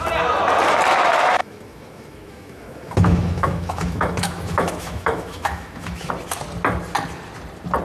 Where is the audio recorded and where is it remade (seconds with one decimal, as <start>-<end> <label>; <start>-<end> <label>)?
0.0-1.4 recorded; 1.4-6.1 remade; 6.1-7.8 recorded